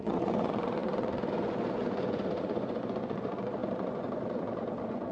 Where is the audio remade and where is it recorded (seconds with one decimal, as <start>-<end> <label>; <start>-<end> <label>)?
0.0-5.1 remade